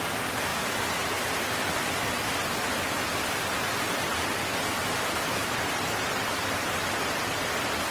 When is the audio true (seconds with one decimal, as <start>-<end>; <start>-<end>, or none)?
0.5-4.7